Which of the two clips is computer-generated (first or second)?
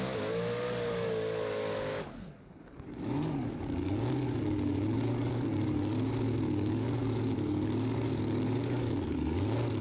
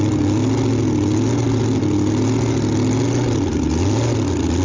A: first